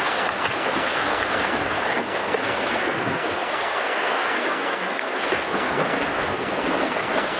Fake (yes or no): yes